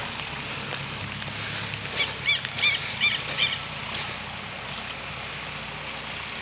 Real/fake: real